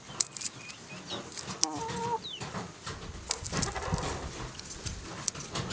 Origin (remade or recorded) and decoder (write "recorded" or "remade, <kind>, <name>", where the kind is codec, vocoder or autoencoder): recorded